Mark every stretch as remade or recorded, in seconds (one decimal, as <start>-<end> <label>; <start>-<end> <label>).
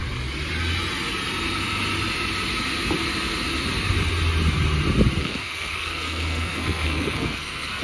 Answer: 0.0-5.2 recorded; 5.2-7.8 remade